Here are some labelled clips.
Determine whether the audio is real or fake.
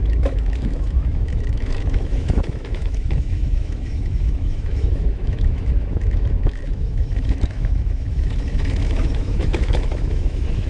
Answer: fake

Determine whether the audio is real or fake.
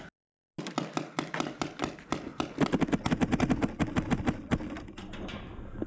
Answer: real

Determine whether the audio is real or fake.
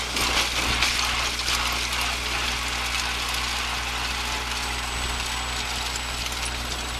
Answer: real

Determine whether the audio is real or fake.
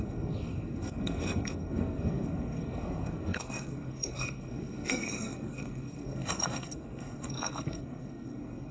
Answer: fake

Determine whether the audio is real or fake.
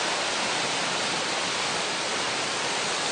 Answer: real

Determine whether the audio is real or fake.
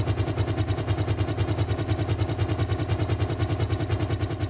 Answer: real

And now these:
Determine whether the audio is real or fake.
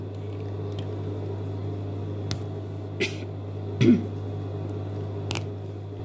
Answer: real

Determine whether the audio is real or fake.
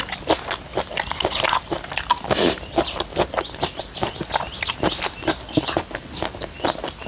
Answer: real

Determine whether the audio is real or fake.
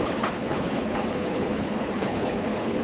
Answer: fake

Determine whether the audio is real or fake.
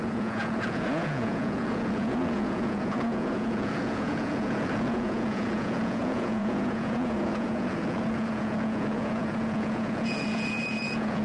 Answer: fake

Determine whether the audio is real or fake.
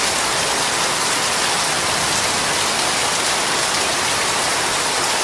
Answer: real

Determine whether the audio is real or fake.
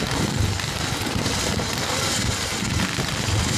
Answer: real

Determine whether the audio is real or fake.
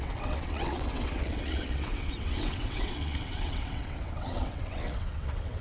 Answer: fake